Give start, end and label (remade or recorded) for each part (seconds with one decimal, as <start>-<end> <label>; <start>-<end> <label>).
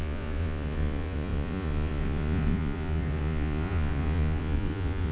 0.0-5.1 remade